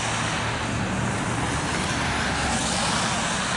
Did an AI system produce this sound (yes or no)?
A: no